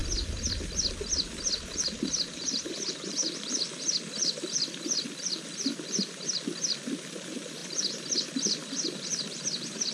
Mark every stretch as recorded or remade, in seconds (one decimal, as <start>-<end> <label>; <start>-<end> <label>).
0.0-1.7 recorded; 1.7-3.2 remade; 3.2-4.1 recorded; 4.1-9.9 remade